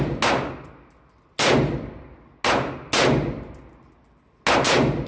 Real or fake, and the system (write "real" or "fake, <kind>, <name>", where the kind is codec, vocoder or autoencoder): real